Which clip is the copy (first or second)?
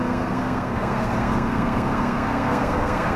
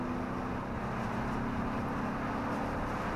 first